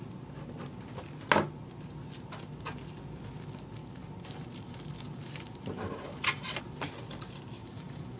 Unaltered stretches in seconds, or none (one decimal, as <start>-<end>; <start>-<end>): 0.0-3.8; 6.6-7.6